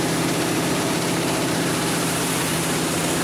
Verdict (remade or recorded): remade